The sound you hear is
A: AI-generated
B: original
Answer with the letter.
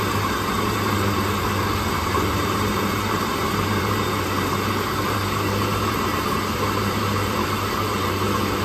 A